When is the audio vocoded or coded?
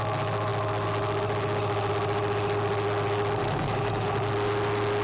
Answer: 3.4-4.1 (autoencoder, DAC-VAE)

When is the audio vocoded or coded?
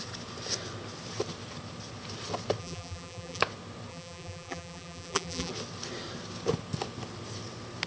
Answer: 2.6-3.4 (vocoder, BigVGAN v2); 3.9-5.5